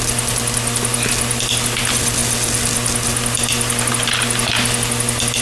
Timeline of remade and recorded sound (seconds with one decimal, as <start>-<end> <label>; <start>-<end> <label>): 0.0-5.4 recorded